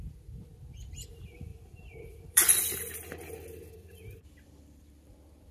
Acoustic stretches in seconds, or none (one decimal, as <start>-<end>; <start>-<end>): 0.5-1.1

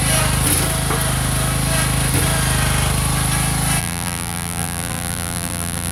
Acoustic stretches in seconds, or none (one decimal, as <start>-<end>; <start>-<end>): 0.0-3.8